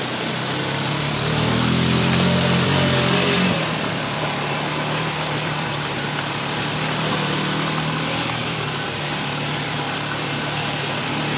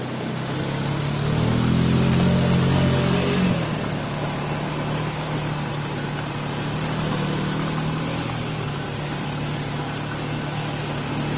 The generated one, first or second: first